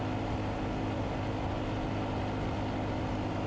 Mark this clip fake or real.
real